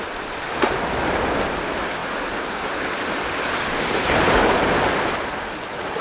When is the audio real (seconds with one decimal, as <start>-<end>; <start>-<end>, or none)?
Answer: 0.0-6.0